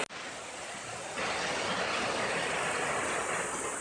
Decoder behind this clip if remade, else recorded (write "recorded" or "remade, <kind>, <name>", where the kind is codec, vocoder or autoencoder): recorded